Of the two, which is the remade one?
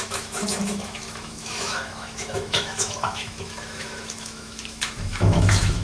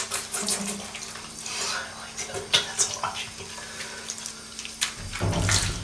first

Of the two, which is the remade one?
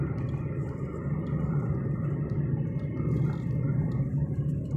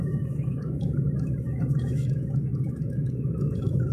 second